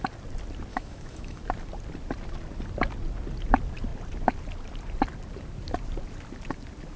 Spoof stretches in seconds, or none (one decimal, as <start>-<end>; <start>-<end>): 0.7-1.4